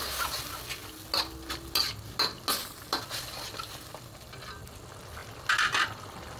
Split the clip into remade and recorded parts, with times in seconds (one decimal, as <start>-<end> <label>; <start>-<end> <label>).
0.0-6.4 recorded